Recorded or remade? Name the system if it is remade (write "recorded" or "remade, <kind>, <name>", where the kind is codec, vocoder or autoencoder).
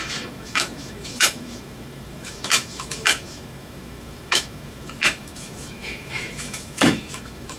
remade, autoencoder, DAC-VAE